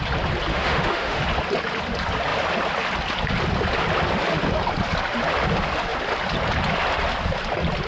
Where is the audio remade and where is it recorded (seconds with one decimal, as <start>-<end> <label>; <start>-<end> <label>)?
0.0-0.5 recorded; 0.5-1.2 remade; 1.2-7.9 recorded